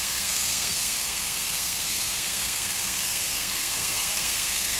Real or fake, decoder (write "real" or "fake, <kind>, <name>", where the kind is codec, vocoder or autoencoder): fake, codec, SNAC